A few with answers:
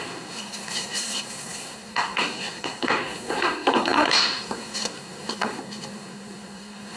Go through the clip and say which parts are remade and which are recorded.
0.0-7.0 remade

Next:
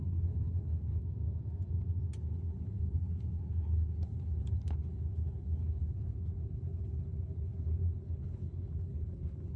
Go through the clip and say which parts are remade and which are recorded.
0.0-1.0 remade; 1.0-2.2 recorded; 2.2-9.6 remade

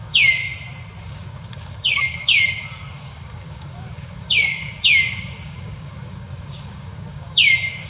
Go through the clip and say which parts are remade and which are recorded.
0.0-0.4 remade; 0.4-1.0 recorded; 1.0-7.9 remade

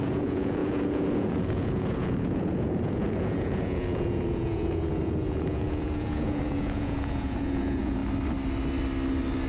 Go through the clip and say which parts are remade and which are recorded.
0.0-8.0 remade; 8.0-9.5 recorded

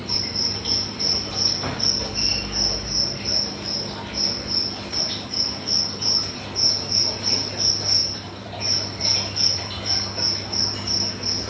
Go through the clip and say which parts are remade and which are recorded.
0.0-1.1 remade; 1.1-8.0 recorded; 8.0-8.6 remade; 8.6-11.5 recorded

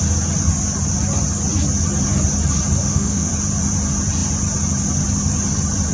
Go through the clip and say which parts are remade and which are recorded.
0.0-2.8 recorded; 2.8-3.3 remade; 3.3-5.9 recorded